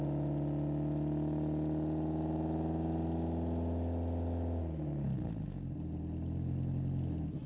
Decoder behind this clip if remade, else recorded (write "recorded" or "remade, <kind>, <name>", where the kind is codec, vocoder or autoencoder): recorded